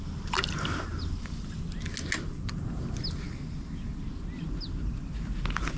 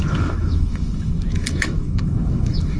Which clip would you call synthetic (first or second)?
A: second